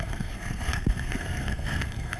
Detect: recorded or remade remade